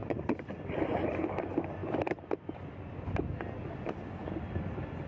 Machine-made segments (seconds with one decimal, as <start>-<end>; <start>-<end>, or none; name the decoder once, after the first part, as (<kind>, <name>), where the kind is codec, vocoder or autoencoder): 0.0-0.5 (vocoder, Vocos)